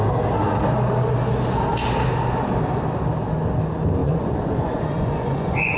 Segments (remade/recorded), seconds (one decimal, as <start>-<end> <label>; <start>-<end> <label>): 0.0-4.0 recorded; 4.0-5.8 remade